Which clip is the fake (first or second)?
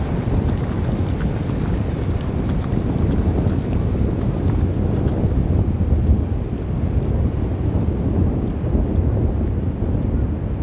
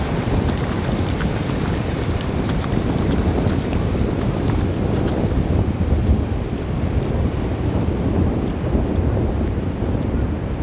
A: second